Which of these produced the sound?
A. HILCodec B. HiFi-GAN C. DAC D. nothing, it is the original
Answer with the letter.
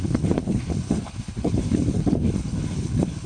A